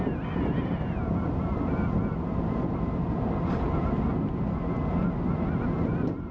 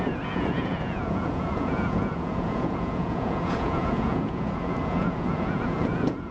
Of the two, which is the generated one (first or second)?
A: second